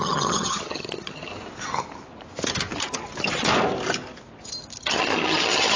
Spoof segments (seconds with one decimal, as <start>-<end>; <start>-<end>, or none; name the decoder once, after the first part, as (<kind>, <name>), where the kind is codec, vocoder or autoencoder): 0.0-1.3 (vocoder, HiFi-GAN); 4.8-5.8

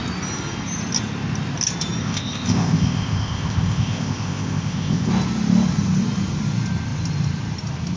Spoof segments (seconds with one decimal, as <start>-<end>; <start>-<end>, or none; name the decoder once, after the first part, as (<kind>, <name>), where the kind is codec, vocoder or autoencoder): 2.0-5.1 (codec, ZipCodec)

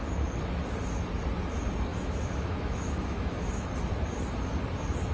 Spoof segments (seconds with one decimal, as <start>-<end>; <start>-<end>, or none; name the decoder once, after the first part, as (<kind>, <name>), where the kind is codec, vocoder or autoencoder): 1.9-3.7 (autoencoder, DAC-VAE)

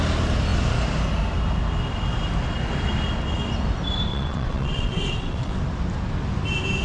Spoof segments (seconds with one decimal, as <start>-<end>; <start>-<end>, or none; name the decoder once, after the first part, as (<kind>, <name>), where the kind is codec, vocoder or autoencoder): 4.1-5.6 (vocoder, WaveNeXt)

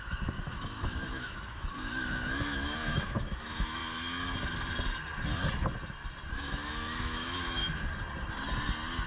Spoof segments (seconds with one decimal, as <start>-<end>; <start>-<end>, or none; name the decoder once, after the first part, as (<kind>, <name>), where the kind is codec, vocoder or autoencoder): 0.0-3.8 (autoencoder, DAC-VAE); 6.3-7.6

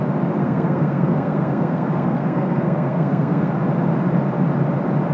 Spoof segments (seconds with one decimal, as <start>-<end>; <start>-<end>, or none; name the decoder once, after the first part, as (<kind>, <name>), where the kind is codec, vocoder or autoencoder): 0.4-3.5 (codec, SNAC)

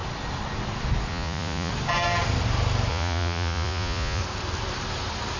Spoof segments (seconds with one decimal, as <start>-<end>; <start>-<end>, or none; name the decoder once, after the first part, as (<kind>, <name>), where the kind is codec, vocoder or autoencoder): 1.1-1.7 (vocoder, Vocos); 2.9-4.2